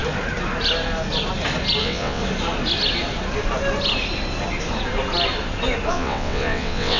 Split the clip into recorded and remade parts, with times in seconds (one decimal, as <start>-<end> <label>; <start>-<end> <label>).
0.0-1.8 recorded; 1.8-2.2 remade; 2.2-5.9 recorded; 5.9-7.0 remade